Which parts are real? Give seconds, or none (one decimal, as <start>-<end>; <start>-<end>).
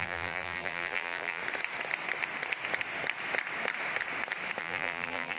1.4-4.6